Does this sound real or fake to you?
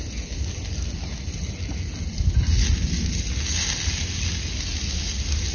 real